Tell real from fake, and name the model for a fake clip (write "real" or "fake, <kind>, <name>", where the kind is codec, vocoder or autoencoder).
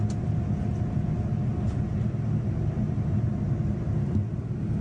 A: real